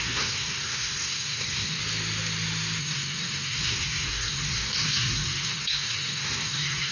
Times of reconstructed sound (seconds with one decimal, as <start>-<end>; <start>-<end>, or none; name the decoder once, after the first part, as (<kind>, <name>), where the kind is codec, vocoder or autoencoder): 0.0-1.8 (codec, SNAC); 2.8-6.9